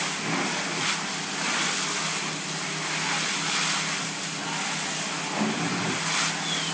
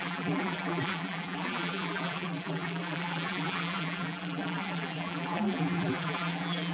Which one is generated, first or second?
second